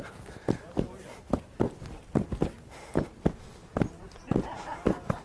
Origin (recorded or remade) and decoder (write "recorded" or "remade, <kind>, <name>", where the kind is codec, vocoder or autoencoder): recorded